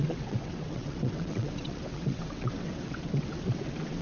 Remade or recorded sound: remade